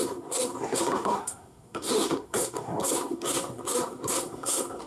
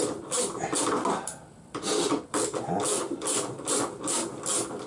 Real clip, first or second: second